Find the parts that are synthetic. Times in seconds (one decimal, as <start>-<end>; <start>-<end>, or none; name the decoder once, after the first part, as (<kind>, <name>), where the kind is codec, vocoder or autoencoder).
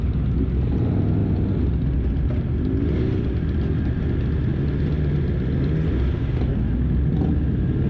none